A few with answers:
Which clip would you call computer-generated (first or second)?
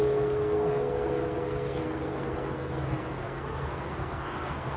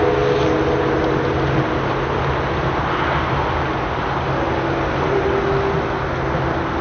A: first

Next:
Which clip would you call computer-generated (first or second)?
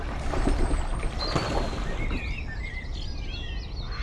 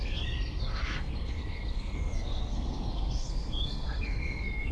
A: second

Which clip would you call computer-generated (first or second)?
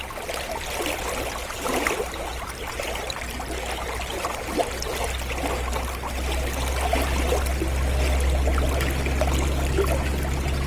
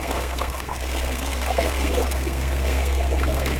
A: second